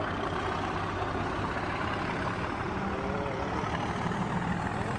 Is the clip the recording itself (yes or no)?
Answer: yes